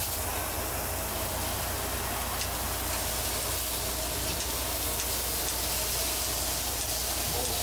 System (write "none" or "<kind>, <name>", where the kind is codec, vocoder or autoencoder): none